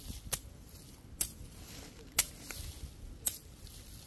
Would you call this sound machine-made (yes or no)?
no